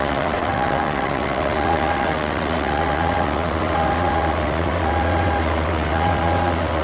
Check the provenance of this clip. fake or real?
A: fake